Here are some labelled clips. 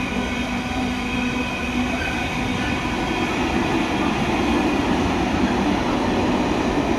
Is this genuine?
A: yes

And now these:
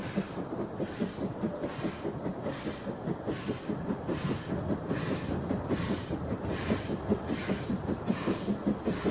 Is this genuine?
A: yes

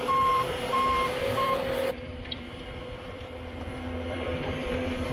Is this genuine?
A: no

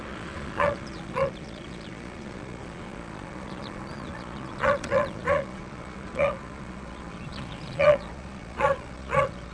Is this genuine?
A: no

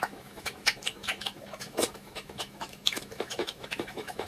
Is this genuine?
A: no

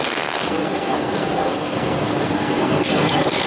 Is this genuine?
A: no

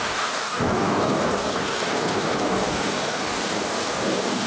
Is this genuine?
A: no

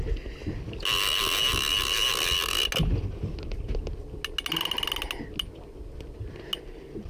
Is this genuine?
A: yes